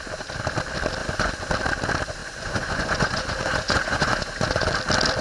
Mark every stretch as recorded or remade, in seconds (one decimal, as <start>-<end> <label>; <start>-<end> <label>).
0.0-1.0 recorded; 1.0-1.5 remade; 1.5-2.2 recorded; 2.2-4.7 remade; 4.7-5.2 recorded